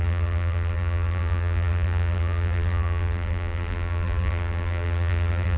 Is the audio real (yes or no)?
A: no